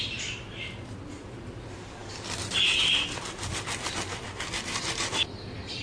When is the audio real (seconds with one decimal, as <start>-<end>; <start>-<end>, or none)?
0.0-5.8